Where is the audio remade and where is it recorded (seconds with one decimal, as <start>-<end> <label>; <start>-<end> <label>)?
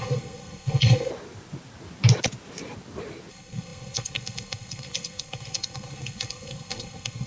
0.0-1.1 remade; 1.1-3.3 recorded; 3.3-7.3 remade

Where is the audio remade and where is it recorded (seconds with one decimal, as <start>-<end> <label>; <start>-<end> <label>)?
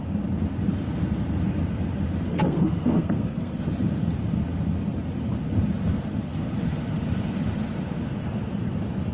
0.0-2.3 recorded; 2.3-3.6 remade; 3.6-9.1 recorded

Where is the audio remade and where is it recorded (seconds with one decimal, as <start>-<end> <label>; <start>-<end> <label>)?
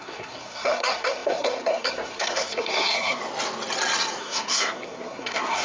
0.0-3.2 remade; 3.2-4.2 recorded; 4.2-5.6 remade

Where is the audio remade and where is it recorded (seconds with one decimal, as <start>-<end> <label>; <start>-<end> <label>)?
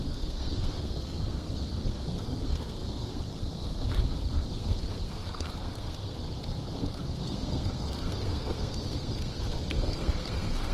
0.0-10.7 remade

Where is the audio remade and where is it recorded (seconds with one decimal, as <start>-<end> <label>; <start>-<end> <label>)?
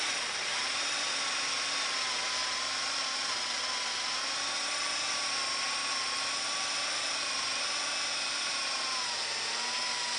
0.0-10.2 recorded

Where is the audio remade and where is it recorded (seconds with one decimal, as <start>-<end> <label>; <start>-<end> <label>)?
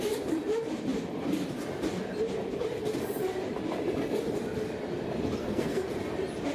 0.0-5.4 recorded; 5.4-5.9 remade; 5.9-6.5 recorded